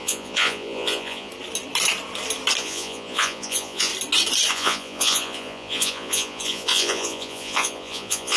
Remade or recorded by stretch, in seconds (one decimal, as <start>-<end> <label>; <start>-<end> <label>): 0.0-1.3 remade; 1.3-2.6 recorded; 2.6-3.9 remade; 3.9-4.5 recorded; 4.5-8.4 remade